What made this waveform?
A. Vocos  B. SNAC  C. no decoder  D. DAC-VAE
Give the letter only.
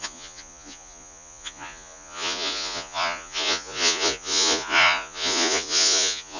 A